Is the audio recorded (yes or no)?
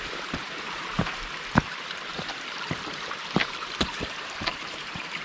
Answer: no